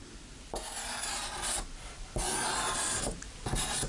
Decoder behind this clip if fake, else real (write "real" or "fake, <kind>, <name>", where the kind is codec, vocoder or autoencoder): real